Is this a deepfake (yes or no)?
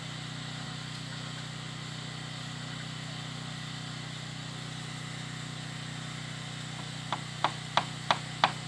no